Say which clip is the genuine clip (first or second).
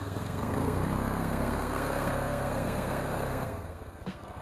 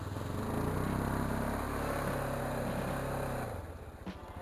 second